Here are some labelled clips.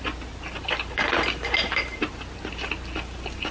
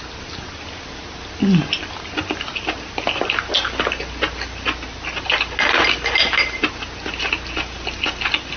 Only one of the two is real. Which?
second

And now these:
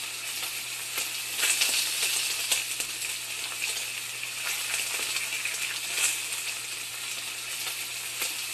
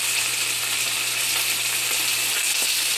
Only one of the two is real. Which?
first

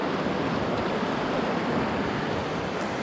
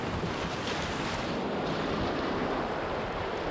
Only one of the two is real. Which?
second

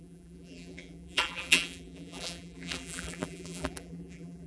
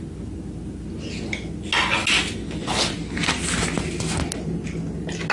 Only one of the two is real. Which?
second